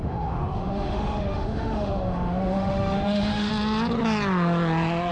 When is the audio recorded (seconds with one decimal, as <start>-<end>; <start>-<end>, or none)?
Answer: 3.5-5.1